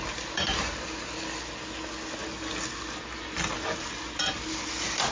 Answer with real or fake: real